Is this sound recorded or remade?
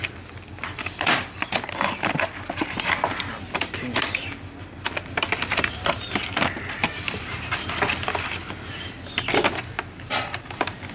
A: remade